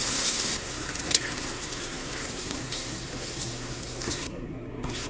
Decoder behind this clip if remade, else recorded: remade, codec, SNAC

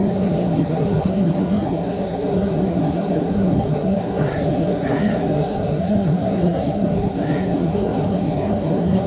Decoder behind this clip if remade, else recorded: remade, codec, SNAC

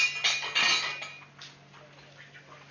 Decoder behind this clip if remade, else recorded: recorded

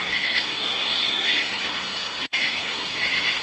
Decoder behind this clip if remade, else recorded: remade, codec, SNAC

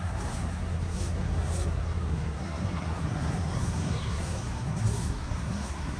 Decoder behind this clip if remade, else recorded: remade, codec, SNAC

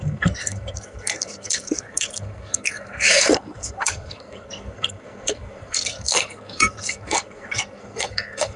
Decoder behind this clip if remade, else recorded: remade, codec, SNAC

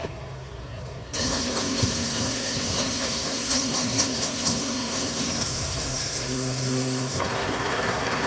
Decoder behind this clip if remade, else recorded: remade, codec, SNAC